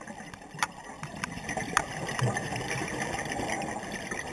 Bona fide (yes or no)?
yes